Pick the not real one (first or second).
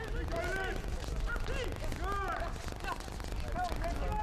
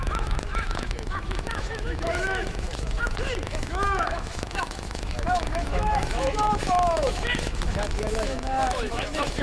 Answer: second